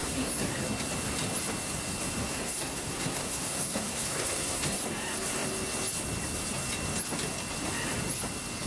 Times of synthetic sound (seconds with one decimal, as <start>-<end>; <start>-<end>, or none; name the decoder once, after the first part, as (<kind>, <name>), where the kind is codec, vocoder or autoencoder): 0.0-0.5 (codec, SNAC); 2.2-4.8